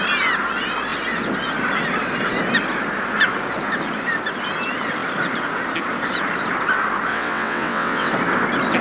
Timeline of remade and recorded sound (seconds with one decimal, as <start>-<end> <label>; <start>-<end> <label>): 0.0-7.1 recorded; 7.1-8.1 remade; 8.1-8.8 recorded